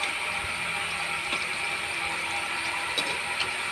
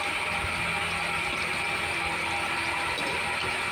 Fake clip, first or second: first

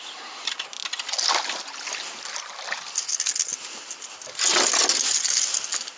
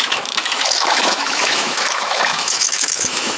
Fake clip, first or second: second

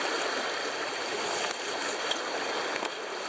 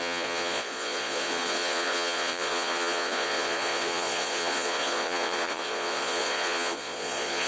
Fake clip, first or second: second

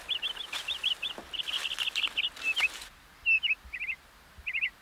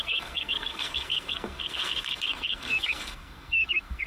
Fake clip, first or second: second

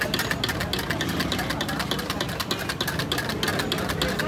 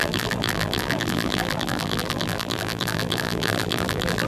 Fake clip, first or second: second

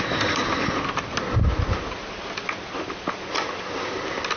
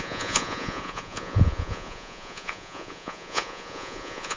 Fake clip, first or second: second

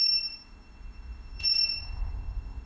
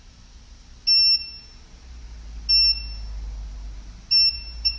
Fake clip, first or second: first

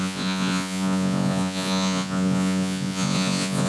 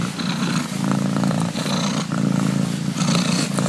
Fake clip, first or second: first